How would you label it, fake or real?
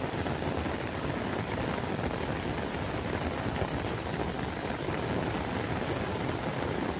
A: real